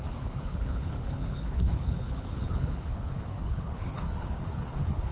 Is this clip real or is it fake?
fake